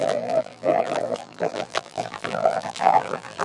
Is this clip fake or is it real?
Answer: fake